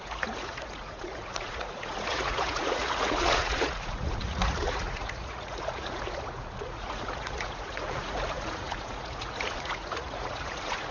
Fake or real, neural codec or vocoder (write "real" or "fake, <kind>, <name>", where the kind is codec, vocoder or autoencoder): fake, vocoder, Vocos